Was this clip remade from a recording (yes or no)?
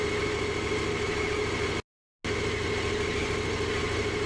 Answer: no